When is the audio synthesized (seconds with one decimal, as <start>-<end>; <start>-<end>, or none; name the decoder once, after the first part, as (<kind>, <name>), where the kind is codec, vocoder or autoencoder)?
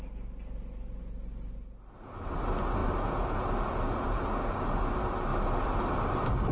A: none